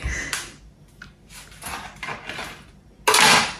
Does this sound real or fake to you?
real